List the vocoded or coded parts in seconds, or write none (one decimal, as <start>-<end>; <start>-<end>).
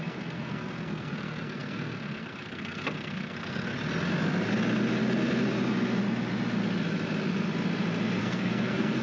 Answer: 0.0-3.7; 8.2-9.0